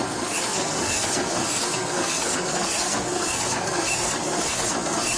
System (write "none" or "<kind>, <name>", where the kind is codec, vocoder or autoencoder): codec, SNAC